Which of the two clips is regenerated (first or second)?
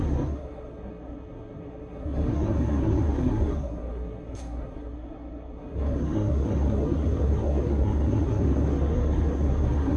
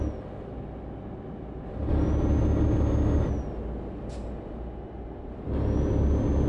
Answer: first